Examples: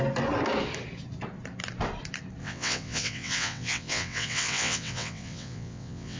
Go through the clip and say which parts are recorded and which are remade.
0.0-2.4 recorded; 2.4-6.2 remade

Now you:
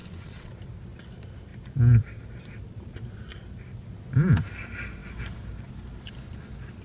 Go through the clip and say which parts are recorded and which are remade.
0.0-0.5 remade; 0.5-6.8 recorded